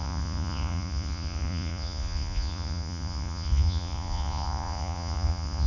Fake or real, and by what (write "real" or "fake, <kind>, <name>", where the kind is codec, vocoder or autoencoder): fake, vocoder, Vocos